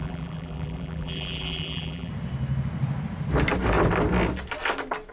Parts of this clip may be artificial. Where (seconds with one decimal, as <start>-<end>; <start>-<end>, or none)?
0.0-2.1